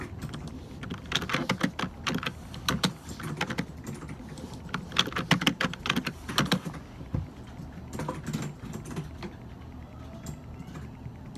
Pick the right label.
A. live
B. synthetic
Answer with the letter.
A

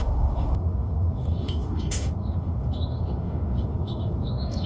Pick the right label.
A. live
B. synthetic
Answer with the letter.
B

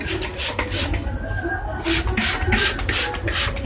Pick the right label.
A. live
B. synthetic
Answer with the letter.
A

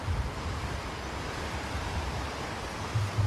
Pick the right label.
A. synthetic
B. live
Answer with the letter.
B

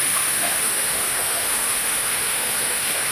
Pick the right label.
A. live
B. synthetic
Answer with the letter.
B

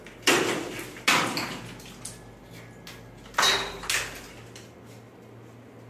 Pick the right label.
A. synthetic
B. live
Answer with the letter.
B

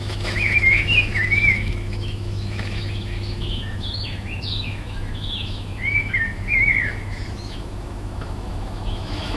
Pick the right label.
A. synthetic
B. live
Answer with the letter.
A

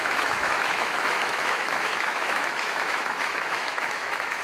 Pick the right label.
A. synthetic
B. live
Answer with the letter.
A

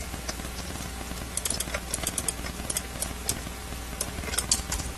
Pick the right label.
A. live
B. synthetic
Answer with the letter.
A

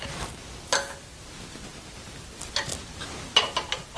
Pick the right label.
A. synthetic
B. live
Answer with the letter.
B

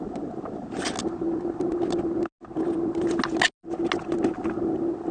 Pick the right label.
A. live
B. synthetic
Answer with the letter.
A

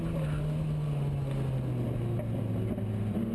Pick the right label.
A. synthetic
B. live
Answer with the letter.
B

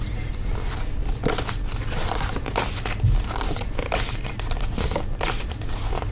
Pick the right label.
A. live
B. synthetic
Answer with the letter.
A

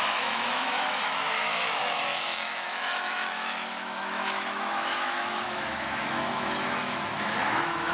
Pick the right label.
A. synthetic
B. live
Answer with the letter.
A